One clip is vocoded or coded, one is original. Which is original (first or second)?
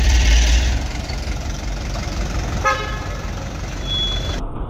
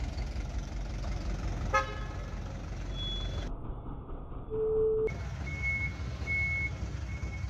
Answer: second